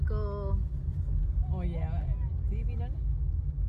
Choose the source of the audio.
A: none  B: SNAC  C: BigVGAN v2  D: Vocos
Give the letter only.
A